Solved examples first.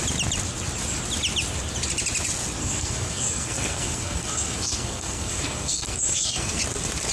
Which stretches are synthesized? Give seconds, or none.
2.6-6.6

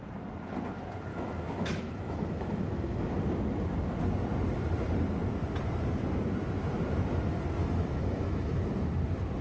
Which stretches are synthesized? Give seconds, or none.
1.1-3.2; 7.6-8.6

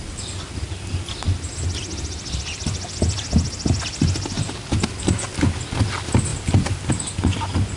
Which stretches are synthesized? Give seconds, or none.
none

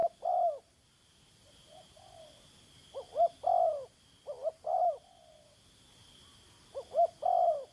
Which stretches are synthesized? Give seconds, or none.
none

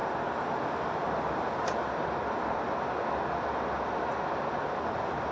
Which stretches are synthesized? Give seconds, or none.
none